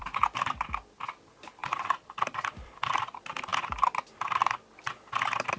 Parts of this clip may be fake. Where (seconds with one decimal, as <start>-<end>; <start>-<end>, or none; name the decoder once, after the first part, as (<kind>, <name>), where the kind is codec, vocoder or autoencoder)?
1.6-3.0 (vocoder, BigVGAN v2)